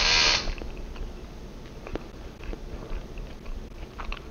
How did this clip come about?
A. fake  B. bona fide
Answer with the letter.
B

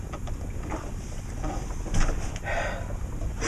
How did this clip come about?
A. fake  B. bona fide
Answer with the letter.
B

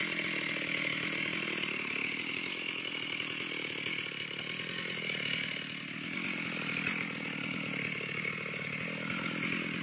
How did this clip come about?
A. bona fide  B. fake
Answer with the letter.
B